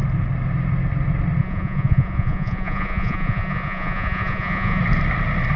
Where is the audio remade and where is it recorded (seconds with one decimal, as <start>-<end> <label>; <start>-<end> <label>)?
0.0-1.4 recorded; 1.4-4.8 remade; 4.8-5.6 recorded